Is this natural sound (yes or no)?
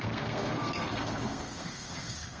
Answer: no